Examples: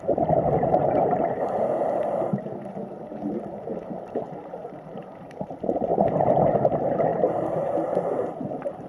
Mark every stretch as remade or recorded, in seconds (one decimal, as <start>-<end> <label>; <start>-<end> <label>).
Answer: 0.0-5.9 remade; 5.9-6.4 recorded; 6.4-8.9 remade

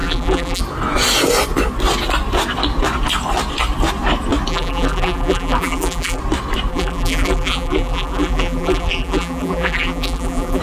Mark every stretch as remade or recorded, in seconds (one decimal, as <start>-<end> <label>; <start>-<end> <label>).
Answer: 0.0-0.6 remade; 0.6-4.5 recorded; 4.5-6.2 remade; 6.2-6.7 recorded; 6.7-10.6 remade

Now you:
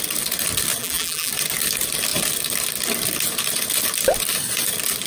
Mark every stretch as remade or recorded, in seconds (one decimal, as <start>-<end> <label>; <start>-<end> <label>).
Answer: 0.0-0.8 recorded; 0.8-1.3 remade; 1.3-5.1 recorded

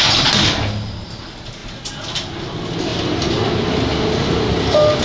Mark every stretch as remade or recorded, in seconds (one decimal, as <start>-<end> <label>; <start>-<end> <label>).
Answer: 0.0-5.0 recorded

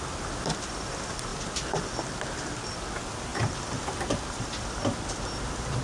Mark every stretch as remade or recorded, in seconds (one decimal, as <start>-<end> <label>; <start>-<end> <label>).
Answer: 0.0-1.3 recorded; 1.3-2.8 remade; 2.8-3.3 recorded; 3.3-5.8 remade

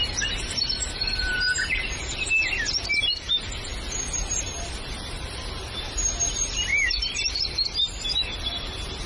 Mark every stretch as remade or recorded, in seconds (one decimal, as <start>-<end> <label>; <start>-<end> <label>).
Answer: 0.0-3.7 remade; 3.7-4.4 recorded; 4.4-6.7 remade; 6.7-7.4 recorded; 7.4-9.1 remade

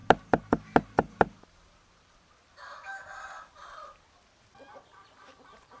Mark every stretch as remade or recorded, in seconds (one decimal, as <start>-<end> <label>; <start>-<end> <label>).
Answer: 0.0-5.8 recorded